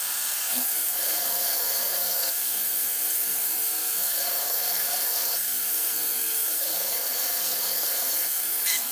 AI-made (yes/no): yes